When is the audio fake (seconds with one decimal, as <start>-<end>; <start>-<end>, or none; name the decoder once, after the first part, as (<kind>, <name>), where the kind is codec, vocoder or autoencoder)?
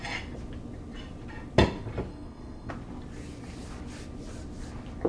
2.1-2.7 (codec, SNAC)